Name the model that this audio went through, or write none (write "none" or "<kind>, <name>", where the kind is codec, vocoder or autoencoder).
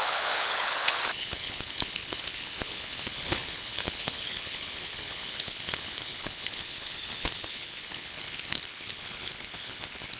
codec, HILCodec